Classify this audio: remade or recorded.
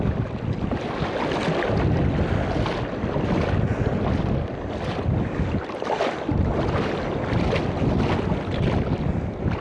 recorded